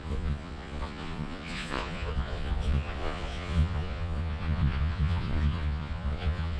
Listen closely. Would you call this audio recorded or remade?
remade